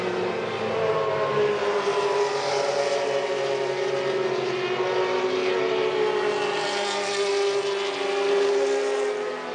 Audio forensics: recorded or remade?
recorded